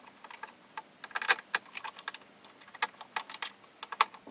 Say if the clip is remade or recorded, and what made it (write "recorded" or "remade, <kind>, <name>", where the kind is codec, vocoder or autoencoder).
recorded